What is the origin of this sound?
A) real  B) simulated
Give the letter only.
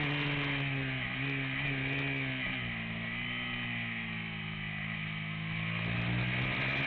A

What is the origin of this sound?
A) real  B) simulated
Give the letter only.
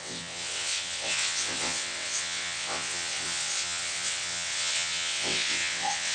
B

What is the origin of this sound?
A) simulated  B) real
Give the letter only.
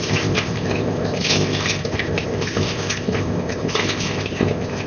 A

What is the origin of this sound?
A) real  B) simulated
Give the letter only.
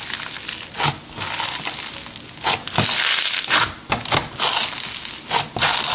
A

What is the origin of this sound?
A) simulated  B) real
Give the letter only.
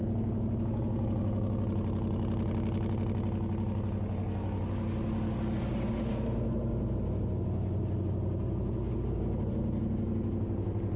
B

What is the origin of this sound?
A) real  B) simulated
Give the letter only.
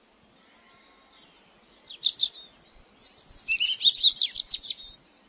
B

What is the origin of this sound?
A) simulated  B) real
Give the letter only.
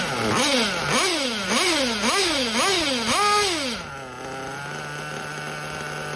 B